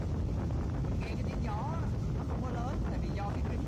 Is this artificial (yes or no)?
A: no